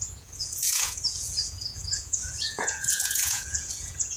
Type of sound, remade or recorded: remade